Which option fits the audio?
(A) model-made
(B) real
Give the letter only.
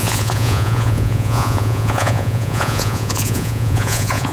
A